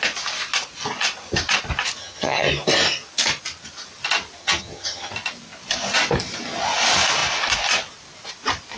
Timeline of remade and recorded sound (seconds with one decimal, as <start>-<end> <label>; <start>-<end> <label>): 0.0-2.0 recorded; 2.0-2.5 remade; 2.5-4.4 recorded; 4.4-5.1 remade; 5.1-8.8 recorded